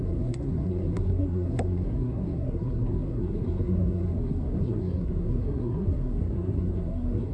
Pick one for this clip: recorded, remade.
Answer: remade